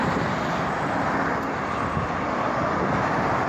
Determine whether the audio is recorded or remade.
recorded